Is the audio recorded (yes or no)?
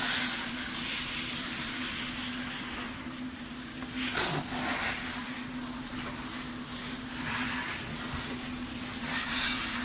yes